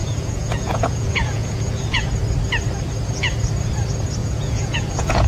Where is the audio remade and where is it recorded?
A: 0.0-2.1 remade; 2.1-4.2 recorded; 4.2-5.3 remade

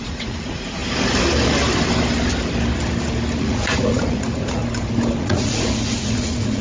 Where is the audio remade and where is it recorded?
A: 0.0-0.8 remade; 0.8-3.4 recorded; 3.4-4.6 remade; 4.6-5.2 recorded; 5.2-6.6 remade

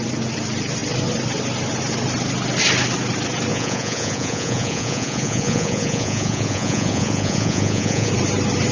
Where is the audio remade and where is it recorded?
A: 0.0-3.5 recorded; 3.5-8.1 remade; 8.1-8.7 recorded

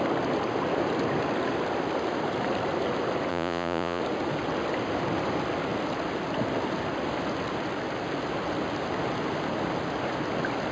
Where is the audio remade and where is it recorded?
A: 0.0-3.3 recorded; 3.3-4.0 remade; 4.0-10.7 recorded